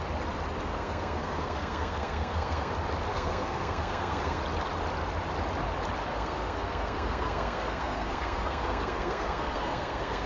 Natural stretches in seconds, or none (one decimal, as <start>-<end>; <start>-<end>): 0.0-0.7; 2.7-3.1; 4.4-6.1